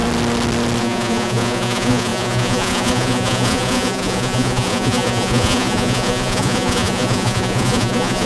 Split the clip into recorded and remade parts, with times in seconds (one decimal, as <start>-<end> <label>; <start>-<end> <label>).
0.0-0.8 recorded; 0.8-8.3 remade